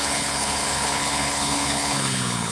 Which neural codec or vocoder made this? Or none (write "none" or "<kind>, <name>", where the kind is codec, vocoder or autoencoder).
codec, HILCodec